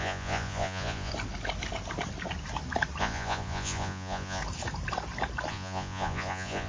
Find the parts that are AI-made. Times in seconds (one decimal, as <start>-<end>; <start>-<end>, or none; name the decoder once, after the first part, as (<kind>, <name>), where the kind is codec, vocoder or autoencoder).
0.0-1.1 (vocoder, Vocos); 3.0-4.4; 5.5-6.7